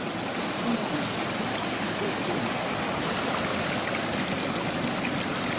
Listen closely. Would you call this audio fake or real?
real